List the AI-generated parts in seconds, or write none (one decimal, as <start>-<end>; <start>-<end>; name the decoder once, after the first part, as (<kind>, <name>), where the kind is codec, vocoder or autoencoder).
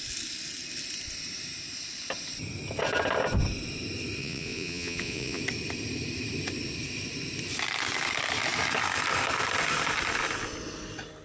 4.2-5.4 (vocoder, Vocos)